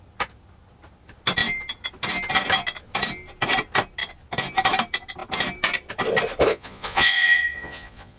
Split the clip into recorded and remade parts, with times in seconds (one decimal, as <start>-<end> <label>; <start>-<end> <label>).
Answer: 0.0-6.5 recorded; 6.5-8.2 remade